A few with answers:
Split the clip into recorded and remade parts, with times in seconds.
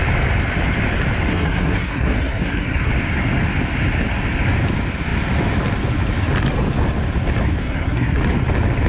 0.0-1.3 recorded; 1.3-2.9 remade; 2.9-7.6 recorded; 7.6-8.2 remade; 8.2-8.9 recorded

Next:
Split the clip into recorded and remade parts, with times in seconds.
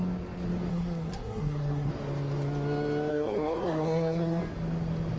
0.0-0.7 recorded; 0.7-1.9 remade; 1.9-3.1 recorded; 3.1-4.4 remade; 4.4-5.2 recorded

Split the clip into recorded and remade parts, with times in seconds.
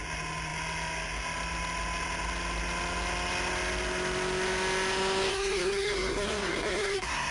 0.0-5.3 recorded; 5.3-7.3 remade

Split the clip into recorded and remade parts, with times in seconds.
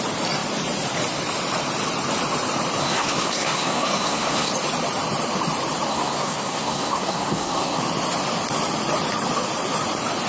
0.0-2.8 recorded; 2.8-4.5 remade; 4.5-5.9 recorded; 5.9-7.8 remade; 7.8-10.3 recorded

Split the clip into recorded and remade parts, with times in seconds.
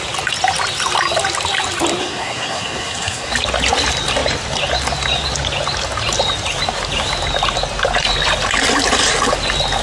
0.0-2.0 recorded; 2.0-3.3 remade; 3.3-9.8 recorded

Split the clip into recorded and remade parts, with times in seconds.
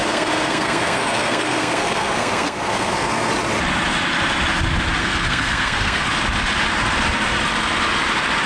0.0-3.3 remade; 3.3-5.0 recorded; 5.0-6.1 remade; 6.1-8.5 recorded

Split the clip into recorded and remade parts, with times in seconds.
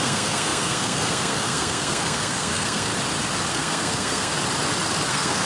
0.0-2.9 remade; 2.9-3.5 recorded; 3.5-4.3 remade; 4.3-5.1 recorded; 5.1-5.5 remade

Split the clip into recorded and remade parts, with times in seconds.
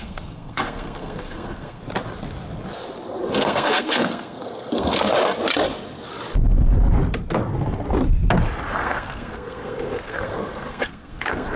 0.0-1.8 remade; 1.8-3.3 recorded; 3.3-5.0 remade; 5.0-8.7 recorded; 8.7-11.6 remade